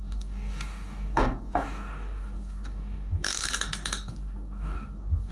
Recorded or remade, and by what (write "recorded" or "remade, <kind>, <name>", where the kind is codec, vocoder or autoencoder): remade, codec, DAC